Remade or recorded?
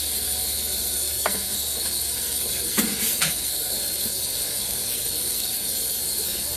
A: remade